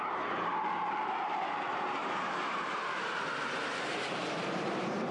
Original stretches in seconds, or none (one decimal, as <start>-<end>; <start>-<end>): 0.0-2.0